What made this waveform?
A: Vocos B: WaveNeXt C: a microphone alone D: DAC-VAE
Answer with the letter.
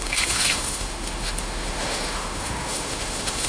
D